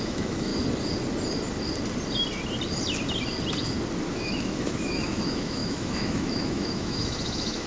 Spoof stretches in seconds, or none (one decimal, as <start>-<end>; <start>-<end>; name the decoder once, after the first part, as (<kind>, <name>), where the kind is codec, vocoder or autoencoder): 0.0-0.5 (autoencoder, DAC-VAE); 4.1-7.7